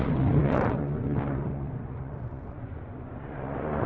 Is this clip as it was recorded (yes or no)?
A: no